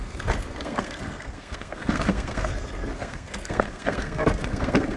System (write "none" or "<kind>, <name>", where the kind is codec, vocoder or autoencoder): codec, SNAC